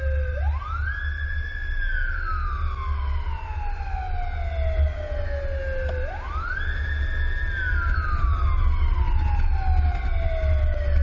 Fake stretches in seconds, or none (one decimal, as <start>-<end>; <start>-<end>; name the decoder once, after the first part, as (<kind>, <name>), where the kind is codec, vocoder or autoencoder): none